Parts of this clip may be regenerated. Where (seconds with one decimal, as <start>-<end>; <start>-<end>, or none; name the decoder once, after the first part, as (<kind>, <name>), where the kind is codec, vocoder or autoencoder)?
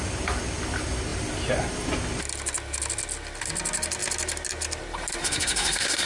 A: 5.2-6.1 (codec, SNAC)